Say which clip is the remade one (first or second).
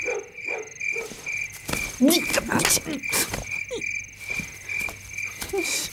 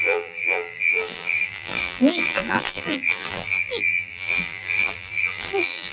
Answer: second